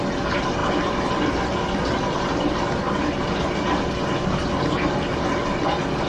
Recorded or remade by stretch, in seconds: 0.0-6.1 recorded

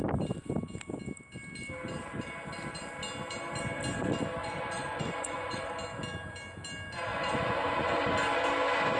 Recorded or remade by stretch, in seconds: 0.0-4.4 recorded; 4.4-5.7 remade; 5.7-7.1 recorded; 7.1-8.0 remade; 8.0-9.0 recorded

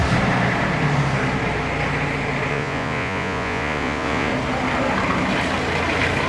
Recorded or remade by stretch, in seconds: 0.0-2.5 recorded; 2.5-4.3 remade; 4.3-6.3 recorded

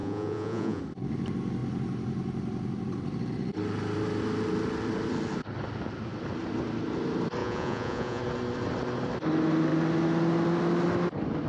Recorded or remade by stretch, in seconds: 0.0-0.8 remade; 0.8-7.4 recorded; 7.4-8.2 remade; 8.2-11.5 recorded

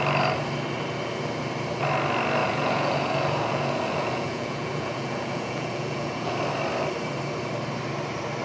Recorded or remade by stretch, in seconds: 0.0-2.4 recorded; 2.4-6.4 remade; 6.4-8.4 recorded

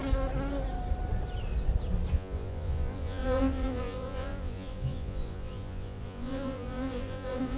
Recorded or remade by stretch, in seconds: 0.0-2.1 recorded; 2.1-7.6 remade

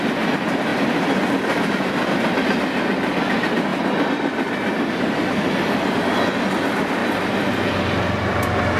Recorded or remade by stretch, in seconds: 0.0-8.8 recorded